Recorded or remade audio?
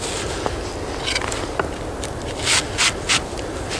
recorded